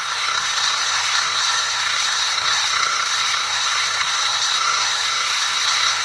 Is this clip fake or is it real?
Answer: fake